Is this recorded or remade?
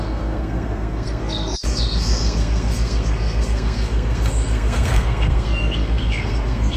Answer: remade